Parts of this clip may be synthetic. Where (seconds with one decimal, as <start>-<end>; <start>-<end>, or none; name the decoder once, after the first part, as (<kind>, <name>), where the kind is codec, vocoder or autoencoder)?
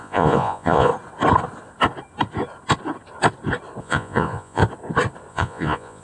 0.0-0.9 (vocoder, Vocos); 3.8-4.6; 5.3-6.0